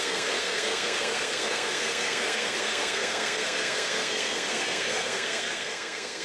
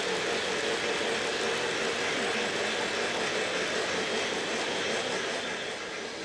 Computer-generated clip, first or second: first